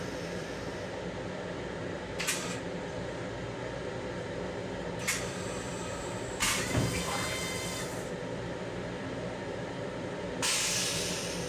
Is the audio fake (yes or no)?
yes